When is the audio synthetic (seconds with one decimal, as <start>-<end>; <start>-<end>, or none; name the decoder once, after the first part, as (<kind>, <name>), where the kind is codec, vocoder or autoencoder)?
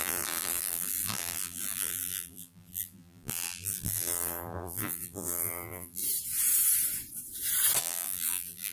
0.0-6.0 (vocoder, BigVGAN v2); 7.8-8.7